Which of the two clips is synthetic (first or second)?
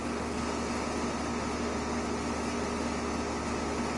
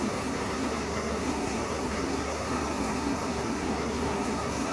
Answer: second